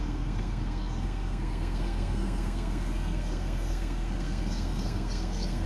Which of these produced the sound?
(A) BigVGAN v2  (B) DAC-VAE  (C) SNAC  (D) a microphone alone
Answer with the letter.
C